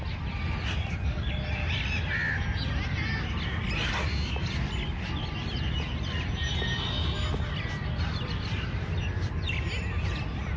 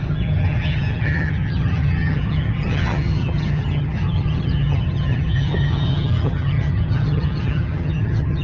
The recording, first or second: first